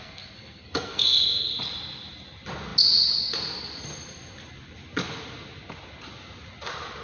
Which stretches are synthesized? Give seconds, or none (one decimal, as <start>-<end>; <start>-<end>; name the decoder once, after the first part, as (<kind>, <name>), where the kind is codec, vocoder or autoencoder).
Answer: 0.0-1.5 (codec, SNAC)